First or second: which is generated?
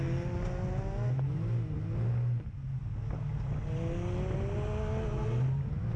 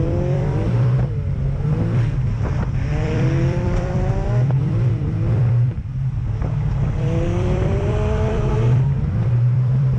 second